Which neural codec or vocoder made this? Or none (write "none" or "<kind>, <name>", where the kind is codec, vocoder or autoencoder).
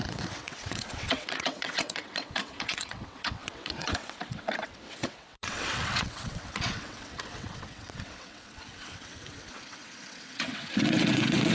vocoder, WaveNeXt